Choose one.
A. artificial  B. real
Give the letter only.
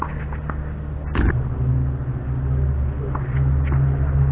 B